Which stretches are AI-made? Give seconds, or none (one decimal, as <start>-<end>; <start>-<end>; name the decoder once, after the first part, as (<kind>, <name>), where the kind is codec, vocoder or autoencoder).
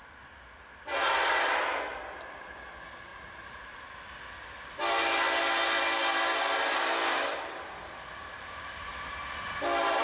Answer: 3.1-3.8 (vocoder, BigVGAN v2); 7.3-9.2